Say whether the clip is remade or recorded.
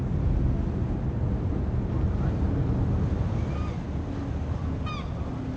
recorded